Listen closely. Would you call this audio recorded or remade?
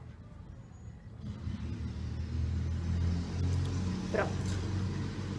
recorded